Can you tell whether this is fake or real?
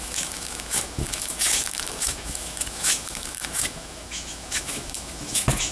fake